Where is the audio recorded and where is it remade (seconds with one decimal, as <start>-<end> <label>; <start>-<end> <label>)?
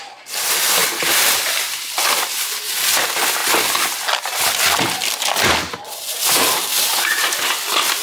0.0-0.8 recorded; 0.8-2.5 remade; 2.5-8.0 recorded